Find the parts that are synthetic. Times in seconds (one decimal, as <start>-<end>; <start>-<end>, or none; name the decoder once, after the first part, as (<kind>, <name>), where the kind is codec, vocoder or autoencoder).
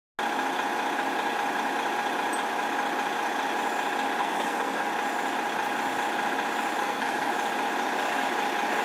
4.2-4.9 (codec, SNAC); 6.8-7.3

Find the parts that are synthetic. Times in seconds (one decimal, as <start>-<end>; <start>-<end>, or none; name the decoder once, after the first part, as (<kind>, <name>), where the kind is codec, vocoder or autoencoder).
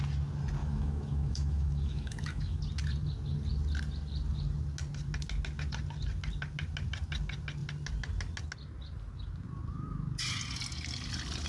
0.6-2.6 (autoencoder, DAC-VAE)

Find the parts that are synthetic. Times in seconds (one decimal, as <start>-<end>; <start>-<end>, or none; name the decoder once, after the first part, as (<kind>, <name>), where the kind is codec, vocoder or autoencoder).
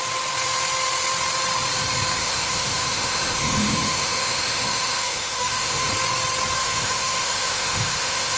2.2-5.9 (autoencoder, DAC-VAE); 6.6-8.4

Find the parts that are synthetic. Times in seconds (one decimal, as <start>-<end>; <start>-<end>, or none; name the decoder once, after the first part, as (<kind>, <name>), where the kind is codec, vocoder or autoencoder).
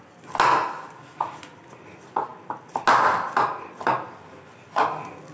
none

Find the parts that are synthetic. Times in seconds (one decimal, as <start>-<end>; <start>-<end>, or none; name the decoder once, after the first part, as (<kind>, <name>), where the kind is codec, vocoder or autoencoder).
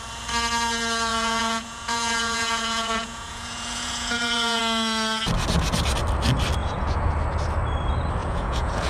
1.1-4.6 (vocoder, Vocos); 6.6-7.1; 8.2-8.9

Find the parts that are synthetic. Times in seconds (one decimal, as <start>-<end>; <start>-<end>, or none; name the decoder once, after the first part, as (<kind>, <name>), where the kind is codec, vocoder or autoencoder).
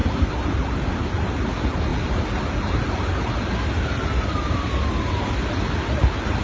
none